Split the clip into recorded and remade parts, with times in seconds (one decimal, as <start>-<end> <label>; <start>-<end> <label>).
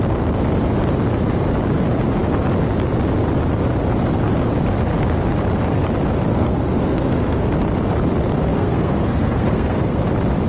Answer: 0.0-6.3 recorded; 6.3-7.5 remade; 7.5-8.5 recorded; 8.5-10.0 remade; 10.0-10.5 recorded